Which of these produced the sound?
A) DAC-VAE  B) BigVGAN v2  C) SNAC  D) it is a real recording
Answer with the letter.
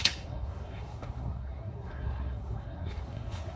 C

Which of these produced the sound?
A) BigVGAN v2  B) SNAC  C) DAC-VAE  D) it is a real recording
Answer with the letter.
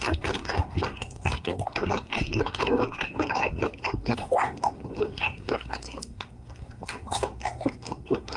B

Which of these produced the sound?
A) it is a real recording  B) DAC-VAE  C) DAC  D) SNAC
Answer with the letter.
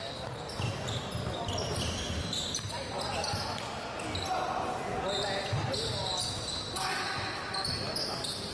A